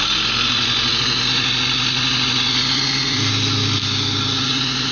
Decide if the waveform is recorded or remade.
recorded